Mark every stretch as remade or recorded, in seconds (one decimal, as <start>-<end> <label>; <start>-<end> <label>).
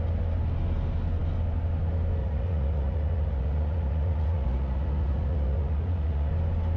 0.0-2.2 recorded; 2.2-6.3 remade; 6.3-6.8 recorded